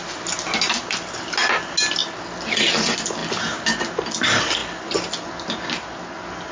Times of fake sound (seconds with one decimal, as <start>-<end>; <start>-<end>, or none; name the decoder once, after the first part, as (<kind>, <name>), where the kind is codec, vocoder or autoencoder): none